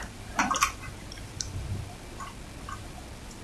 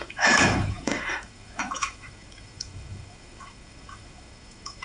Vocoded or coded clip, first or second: second